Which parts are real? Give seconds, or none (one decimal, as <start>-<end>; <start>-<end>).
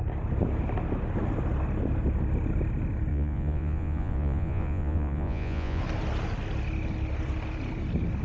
0.0-3.1; 5.8-8.2